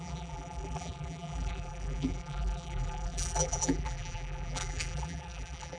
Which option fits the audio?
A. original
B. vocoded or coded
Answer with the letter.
B